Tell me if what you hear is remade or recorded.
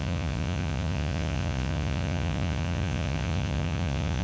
remade